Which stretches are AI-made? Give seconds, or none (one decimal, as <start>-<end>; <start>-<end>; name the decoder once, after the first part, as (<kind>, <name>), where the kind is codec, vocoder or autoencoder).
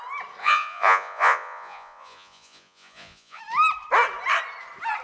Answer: 0.4-3.4 (vocoder, Vocos)